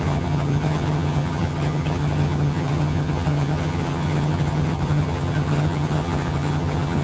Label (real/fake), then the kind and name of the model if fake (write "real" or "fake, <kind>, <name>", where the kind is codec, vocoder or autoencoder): fake, vocoder, HiFi-GAN